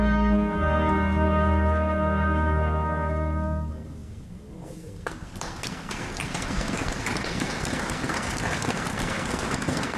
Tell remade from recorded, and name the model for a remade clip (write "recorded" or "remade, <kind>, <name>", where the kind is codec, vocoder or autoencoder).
remade, codec, SNAC